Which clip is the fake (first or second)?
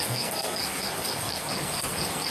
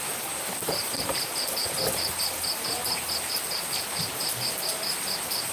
first